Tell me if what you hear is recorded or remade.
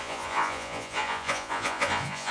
remade